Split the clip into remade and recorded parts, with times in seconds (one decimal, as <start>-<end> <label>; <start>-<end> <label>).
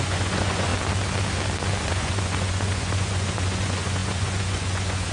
0.0-0.7 remade; 0.7-1.8 recorded; 1.8-5.1 remade